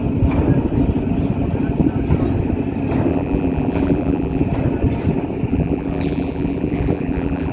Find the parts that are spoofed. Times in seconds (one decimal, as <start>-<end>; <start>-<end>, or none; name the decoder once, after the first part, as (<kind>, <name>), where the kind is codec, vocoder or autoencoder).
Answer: 3.1-4.4 (vocoder, BigVGAN v2); 5.5-7.5